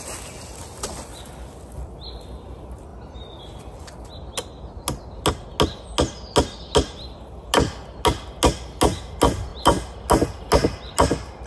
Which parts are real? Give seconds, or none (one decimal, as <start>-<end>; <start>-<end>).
0.0-11.5